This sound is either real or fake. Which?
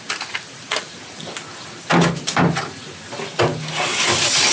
real